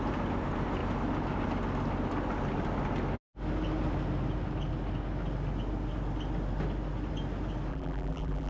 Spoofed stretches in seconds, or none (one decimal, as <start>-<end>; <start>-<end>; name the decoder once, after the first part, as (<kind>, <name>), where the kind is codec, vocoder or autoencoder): 7.7-8.5 (vocoder, BigVGAN v2)